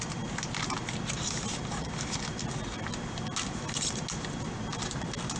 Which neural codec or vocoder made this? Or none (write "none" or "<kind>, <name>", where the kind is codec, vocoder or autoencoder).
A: none